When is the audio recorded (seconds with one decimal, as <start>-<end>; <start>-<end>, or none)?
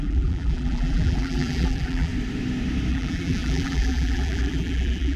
2.1-2.9